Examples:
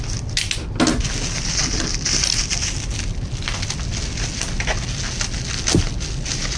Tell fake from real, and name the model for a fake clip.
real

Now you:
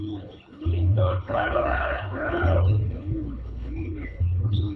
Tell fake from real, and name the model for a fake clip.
fake, codec, HILCodec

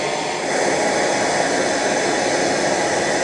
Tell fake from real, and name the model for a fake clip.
real